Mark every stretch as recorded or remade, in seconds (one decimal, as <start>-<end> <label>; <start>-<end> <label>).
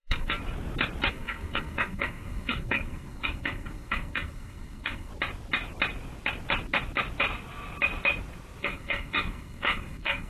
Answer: 0.0-0.4 remade; 0.4-1.1 recorded; 1.1-5.1 remade; 5.1-8.6 recorded; 8.6-10.3 remade